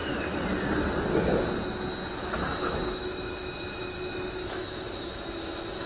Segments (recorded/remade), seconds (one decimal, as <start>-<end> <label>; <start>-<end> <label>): 0.0-2.2 recorded; 2.2-5.9 remade